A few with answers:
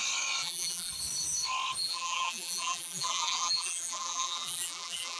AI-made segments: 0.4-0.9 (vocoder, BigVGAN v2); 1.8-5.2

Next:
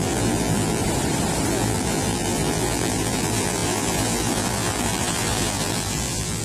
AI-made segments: 0.0-0.8 (vocoder, BigVGAN v2); 1.5-6.4